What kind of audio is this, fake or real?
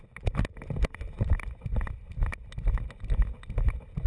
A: real